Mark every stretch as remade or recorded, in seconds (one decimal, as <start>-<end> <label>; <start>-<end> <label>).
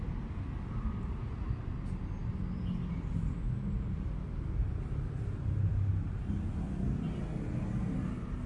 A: 0.0-8.5 recorded